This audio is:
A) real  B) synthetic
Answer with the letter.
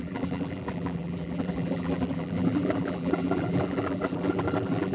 B